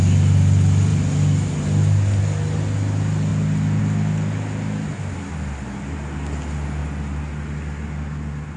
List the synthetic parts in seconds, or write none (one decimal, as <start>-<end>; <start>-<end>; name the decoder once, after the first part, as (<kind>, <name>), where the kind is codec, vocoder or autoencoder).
none